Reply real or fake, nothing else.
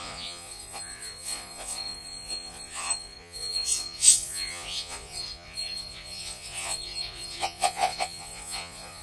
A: fake